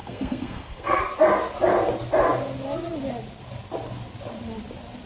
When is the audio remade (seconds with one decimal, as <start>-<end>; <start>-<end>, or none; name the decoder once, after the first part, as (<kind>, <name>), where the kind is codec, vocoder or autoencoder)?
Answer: 0.0-1.0 (codec, SNAC)

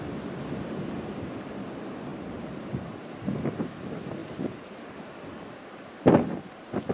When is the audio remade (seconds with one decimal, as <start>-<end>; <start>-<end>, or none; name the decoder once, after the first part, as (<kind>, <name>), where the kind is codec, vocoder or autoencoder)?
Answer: none

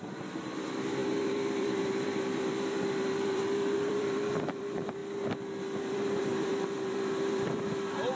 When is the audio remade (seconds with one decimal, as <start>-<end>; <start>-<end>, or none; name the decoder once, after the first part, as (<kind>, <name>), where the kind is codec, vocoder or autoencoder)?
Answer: 0.0-5.0 (vocoder, BigVGAN v2); 5.8-8.2

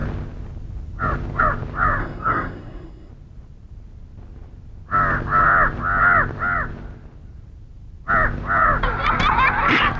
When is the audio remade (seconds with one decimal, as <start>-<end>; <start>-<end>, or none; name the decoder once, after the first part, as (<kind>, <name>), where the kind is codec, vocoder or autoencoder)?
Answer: 2.0-3.1 (codec, SNAC)

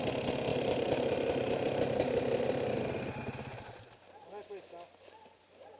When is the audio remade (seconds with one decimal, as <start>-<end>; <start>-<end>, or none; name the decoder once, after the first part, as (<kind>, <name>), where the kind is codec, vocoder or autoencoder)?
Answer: 0.5-2.5 (vocoder, BigVGAN v2)